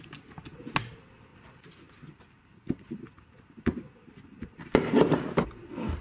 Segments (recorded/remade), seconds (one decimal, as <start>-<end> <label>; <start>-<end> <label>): 0.0-1.3 recorded; 1.3-3.8 remade; 3.8-6.0 recorded